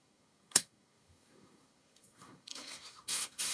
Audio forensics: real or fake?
fake